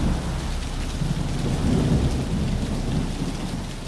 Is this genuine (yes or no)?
yes